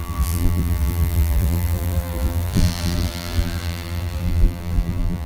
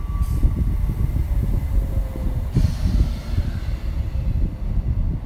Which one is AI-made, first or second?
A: first